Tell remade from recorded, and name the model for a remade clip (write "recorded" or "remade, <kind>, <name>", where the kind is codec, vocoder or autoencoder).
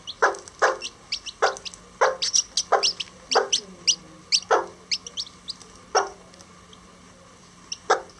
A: recorded